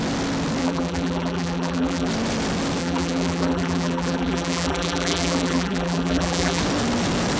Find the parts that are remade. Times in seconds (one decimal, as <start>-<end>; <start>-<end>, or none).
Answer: 0.6-2.1; 2.8-6.6